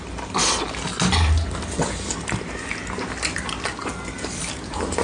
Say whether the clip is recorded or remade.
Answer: recorded